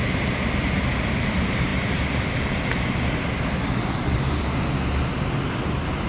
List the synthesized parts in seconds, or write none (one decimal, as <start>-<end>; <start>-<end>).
none